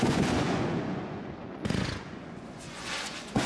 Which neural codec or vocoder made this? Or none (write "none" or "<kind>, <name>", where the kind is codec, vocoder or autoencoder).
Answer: vocoder, Vocos